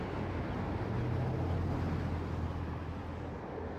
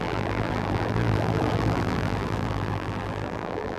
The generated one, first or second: second